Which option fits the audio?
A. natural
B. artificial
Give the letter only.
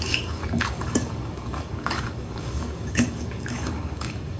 B